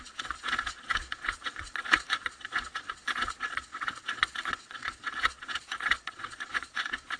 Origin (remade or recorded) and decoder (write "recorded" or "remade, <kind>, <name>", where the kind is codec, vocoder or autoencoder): remade, vocoder, Vocos